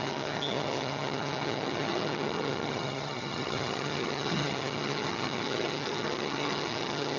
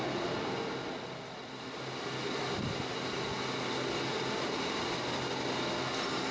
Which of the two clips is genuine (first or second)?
second